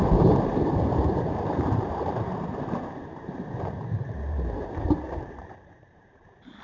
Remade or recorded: remade